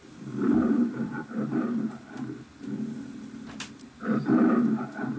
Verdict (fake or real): real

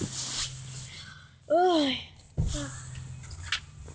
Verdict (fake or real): real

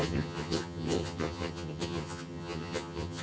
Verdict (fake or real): fake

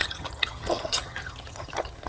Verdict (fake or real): fake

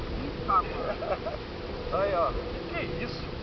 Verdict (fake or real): real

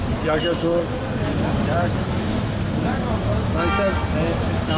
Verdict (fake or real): real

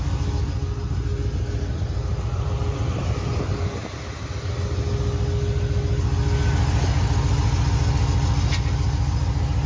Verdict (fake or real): real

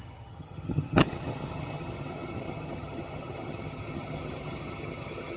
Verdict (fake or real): fake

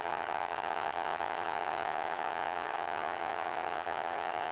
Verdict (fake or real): fake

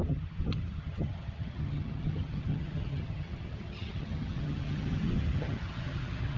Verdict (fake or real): fake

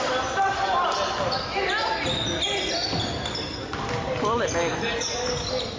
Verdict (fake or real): real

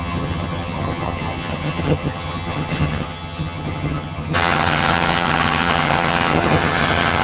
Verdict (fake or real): fake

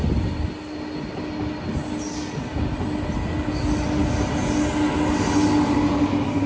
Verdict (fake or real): real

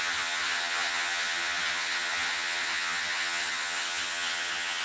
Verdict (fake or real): fake